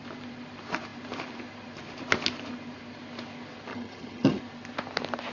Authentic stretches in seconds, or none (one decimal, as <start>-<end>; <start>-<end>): 0.0-3.7; 4.4-5.3